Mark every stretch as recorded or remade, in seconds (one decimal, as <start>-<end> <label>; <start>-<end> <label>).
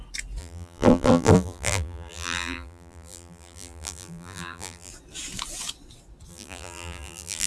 0.0-0.4 recorded; 0.4-4.9 remade; 4.9-6.3 recorded; 6.3-7.5 remade